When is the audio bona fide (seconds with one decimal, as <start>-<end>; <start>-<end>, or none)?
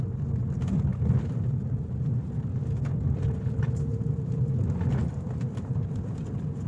0.0-0.9; 2.4-3.9; 4.5-5.0; 6.1-6.7